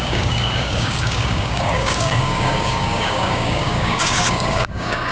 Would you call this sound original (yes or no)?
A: no